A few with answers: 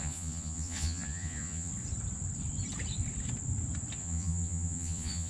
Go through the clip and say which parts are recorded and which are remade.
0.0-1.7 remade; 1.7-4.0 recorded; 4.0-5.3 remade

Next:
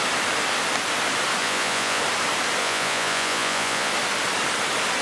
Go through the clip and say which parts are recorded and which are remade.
0.0-1.4 recorded; 1.4-2.0 remade; 2.0-2.6 recorded; 2.6-3.9 remade; 3.9-5.0 recorded

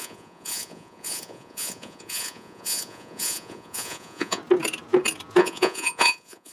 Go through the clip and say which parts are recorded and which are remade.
0.0-4.4 remade; 4.4-5.4 recorded; 5.4-6.5 remade

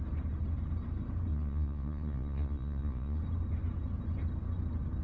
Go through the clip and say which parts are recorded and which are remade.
0.0-1.3 recorded; 1.3-3.2 remade; 3.2-5.0 recorded

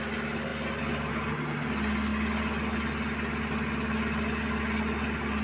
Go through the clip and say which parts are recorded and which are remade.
0.0-5.4 recorded

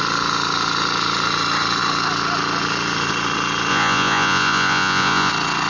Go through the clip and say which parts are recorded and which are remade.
0.0-3.7 recorded; 3.7-5.3 remade; 5.3-5.7 recorded

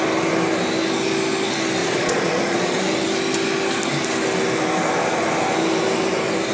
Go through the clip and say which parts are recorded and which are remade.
0.0-1.8 recorded; 1.8-2.8 remade; 2.8-6.5 recorded